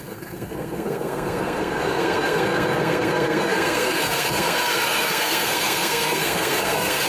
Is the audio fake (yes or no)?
yes